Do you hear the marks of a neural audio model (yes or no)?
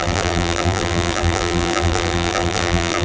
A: yes